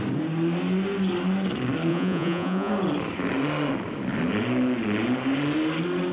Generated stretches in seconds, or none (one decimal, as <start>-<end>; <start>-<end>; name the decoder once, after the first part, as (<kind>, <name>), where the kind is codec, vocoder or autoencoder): 1.9-2.7 (vocoder, Vocos)